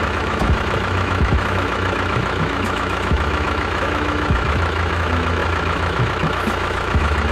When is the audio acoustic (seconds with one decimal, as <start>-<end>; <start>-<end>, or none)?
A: none